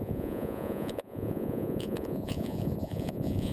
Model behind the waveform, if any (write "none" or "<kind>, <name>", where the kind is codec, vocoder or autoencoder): vocoder, Vocos